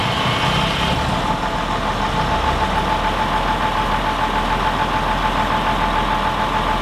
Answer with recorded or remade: recorded